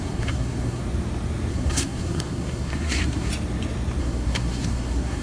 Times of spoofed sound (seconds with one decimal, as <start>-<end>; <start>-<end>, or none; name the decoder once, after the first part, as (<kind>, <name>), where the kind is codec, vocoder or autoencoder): 0.0-0.8 (codec, SNAC); 1.5-3.3; 4.0-5.2